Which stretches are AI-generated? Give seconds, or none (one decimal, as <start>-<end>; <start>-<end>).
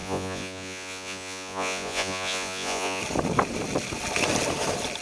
0.0-3.0